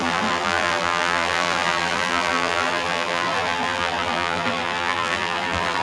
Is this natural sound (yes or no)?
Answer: no